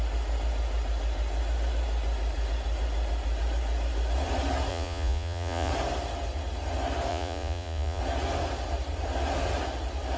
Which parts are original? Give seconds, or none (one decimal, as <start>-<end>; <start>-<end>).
0.0-4.7; 5.7-7.1; 8.0-10.2